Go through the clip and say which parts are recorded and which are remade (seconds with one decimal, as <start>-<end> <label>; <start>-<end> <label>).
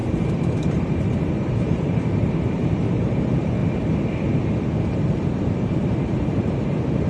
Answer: 0.0-3.6 remade; 3.6-4.8 recorded; 4.8-7.1 remade